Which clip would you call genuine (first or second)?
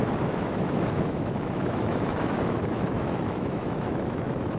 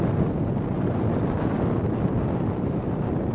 second